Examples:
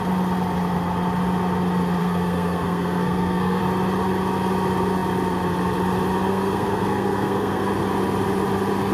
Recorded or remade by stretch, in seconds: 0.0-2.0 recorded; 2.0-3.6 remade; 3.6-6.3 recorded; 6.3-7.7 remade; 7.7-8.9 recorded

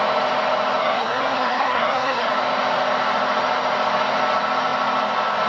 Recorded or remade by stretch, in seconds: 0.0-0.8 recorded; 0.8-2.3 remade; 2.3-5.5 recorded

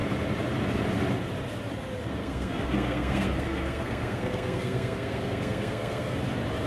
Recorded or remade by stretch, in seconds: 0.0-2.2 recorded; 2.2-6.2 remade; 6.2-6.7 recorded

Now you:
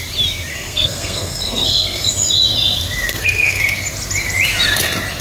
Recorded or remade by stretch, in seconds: 0.0-0.5 recorded; 0.5-2.1 remade; 2.1-3.1 recorded; 3.1-3.6 remade; 3.6-5.2 recorded

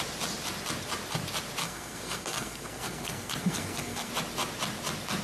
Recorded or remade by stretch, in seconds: 0.0-1.6 recorded; 1.6-4.1 remade; 4.1-5.2 recorded

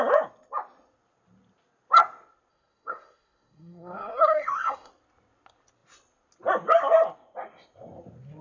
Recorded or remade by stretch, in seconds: 0.0-2.5 recorded; 2.5-4.9 remade; 4.9-8.4 recorded